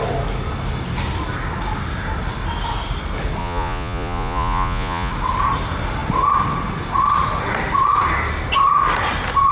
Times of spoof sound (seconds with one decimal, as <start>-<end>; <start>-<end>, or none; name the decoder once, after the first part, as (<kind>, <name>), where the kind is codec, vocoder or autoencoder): 3.4-5.1 (vocoder, Vocos)